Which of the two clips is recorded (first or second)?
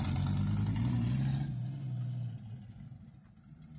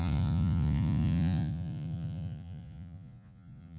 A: first